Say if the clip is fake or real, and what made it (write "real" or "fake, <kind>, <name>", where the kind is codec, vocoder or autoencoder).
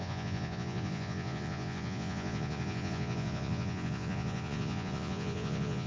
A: fake, vocoder, Vocos